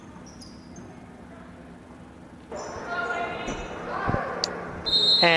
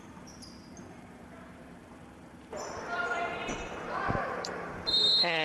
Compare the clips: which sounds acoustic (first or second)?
first